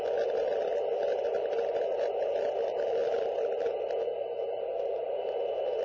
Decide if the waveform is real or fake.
real